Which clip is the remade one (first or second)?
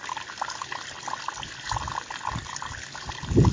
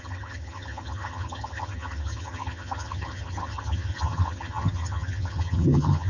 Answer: second